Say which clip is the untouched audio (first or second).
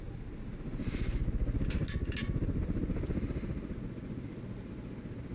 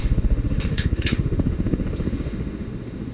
first